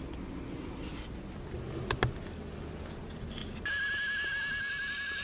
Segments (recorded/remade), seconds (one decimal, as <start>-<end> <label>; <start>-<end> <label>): 0.0-5.2 recorded